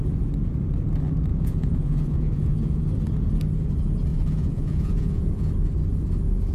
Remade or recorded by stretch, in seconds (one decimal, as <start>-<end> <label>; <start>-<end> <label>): 0.0-1.3 recorded; 1.3-2.8 remade; 2.8-4.1 recorded; 4.1-5.5 remade; 5.5-6.5 recorded